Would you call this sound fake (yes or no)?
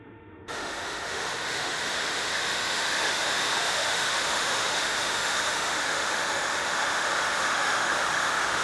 yes